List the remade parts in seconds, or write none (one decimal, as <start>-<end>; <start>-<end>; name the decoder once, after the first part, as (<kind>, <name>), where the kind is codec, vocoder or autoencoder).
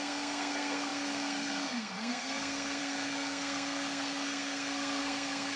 0.0-5.6 (codec, SNAC)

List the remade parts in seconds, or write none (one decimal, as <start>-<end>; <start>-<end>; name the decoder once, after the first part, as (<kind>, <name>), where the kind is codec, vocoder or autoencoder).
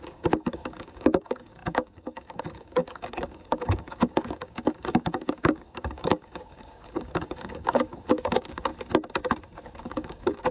0.0-8.7 (codec, DAC); 9.8-10.5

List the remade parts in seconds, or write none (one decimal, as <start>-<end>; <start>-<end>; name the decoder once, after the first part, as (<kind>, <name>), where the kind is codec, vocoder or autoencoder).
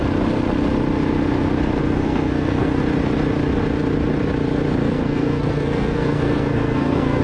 1.8-2.8 (codec, SNAC); 4.8-7.2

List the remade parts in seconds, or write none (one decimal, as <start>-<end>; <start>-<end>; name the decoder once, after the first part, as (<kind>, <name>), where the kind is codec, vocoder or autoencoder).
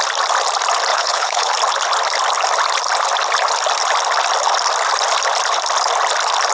0.9-1.5 (codec, HILCodec)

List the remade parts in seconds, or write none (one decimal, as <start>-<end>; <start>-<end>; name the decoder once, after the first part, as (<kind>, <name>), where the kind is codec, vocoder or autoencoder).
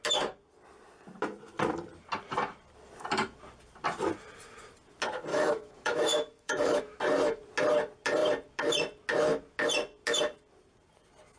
5.3-7.0 (autoencoder, DAC-VAE)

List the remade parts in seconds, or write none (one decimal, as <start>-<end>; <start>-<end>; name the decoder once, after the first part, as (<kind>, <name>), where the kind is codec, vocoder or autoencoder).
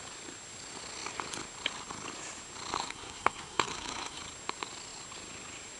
2.8-4.2 (codec, SNAC)